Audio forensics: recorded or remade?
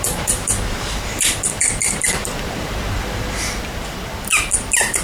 remade